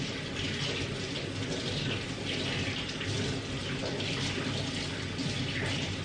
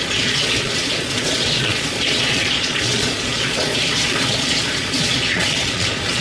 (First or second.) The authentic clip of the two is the first